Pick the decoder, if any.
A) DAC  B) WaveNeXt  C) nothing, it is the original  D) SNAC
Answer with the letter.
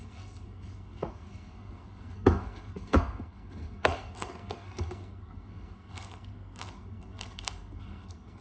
D